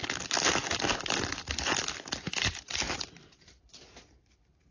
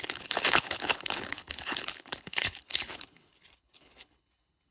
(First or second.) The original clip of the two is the first